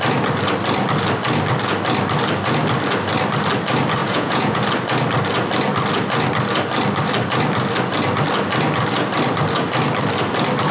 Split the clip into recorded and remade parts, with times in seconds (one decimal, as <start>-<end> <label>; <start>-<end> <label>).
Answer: 0.0-4.0 recorded; 4.0-4.6 remade; 4.6-10.7 recorded